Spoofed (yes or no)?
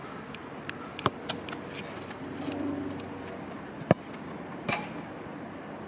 no